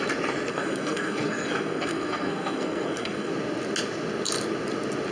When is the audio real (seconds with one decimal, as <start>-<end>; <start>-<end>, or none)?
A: 0.0-0.5; 3.3-5.1